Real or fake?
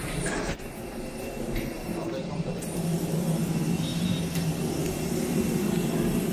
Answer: real